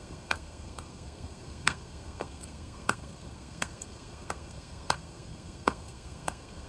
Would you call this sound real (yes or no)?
no